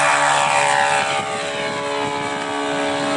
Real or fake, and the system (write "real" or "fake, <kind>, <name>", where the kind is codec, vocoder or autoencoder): real